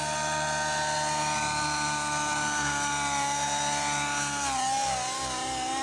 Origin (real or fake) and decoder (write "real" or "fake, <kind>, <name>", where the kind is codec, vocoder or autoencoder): real